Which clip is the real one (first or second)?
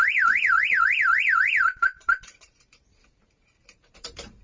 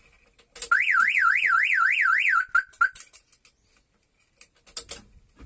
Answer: second